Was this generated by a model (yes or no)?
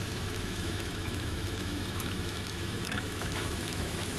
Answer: yes